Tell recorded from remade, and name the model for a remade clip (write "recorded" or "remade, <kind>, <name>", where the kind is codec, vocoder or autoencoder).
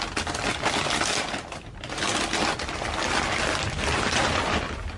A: recorded